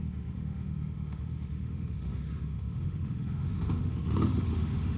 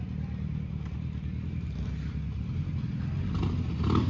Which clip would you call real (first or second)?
second